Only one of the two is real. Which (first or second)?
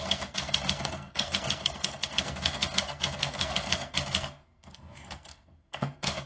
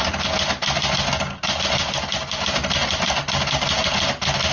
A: second